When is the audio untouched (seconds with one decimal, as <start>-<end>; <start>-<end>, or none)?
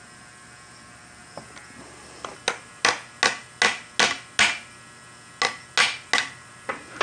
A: 0.0-7.0